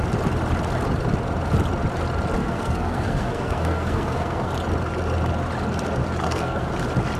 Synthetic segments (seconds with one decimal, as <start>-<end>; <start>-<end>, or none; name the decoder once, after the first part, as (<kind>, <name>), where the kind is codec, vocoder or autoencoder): 2.4-4.5 (codec, SNAC); 6.2-6.7